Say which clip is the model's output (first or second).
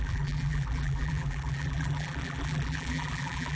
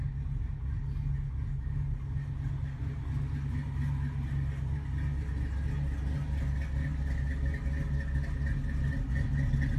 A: first